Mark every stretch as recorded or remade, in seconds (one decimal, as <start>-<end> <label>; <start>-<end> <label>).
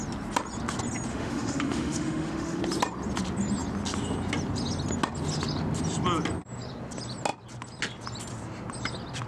0.0-1.1 recorded; 1.1-2.6 remade; 2.6-9.3 recorded